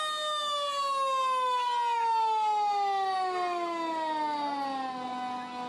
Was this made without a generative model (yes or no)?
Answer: yes